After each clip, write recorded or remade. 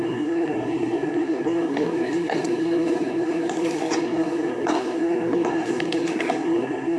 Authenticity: remade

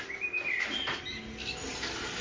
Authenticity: recorded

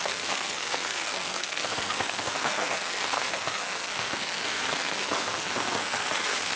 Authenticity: remade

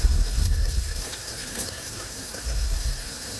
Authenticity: remade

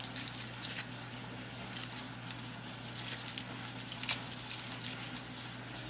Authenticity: recorded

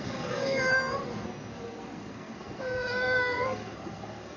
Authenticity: remade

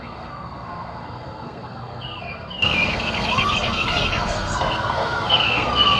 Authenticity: remade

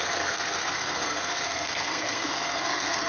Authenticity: remade